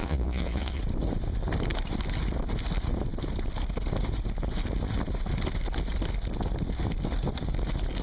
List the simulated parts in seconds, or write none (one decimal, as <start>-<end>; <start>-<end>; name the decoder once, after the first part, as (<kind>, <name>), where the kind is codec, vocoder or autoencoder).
0.0-0.8 (vocoder, Vocos)